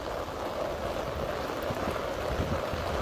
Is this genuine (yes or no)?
yes